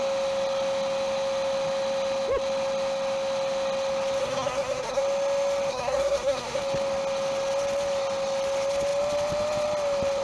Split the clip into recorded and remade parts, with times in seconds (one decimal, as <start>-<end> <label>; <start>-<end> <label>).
0.0-4.2 recorded; 4.2-5.0 remade; 5.0-5.7 recorded; 5.7-6.6 remade; 6.6-10.2 recorded